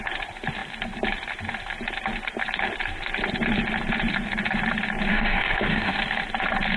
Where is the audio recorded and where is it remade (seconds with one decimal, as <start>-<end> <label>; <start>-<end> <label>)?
0.0-5.1 recorded; 5.1-6.0 remade; 6.0-6.8 recorded